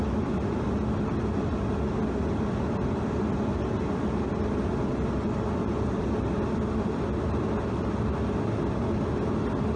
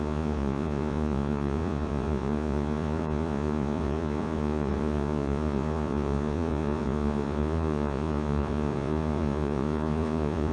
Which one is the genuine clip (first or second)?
first